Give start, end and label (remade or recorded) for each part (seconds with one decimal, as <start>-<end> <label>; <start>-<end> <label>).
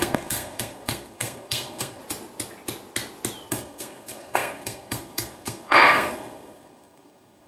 0.0-2.0 remade; 2.0-3.5 recorded; 3.5-7.5 remade